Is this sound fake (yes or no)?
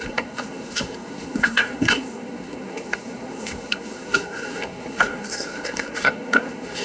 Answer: yes